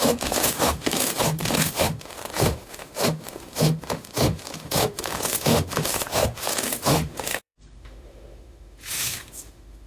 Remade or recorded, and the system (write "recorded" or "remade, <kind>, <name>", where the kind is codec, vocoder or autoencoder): remade, autoencoder, DAC-VAE